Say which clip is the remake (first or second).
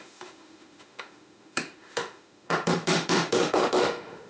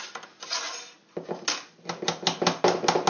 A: first